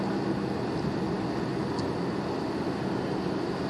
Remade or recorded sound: recorded